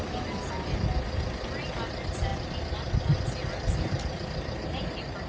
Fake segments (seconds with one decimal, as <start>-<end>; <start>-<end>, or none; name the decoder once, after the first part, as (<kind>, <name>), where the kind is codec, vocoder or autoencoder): none